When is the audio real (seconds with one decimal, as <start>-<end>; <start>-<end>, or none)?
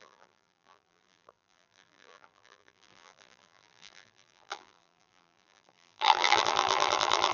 none